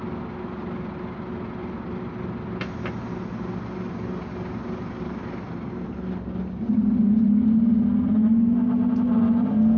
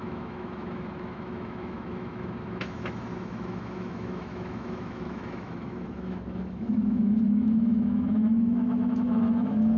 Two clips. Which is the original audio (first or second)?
first